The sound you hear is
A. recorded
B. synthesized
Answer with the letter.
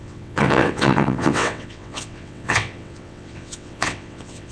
B